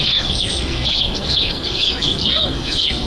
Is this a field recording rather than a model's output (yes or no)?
no